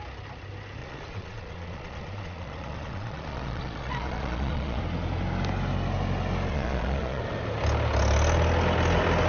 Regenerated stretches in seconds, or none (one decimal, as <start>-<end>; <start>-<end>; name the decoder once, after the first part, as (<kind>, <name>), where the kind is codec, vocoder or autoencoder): 0.8-4.8 (vocoder, Vocos); 6.5-7.2